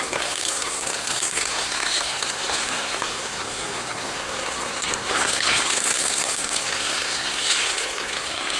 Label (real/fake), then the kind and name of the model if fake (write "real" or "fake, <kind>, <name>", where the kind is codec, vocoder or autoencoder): fake, codec, SNAC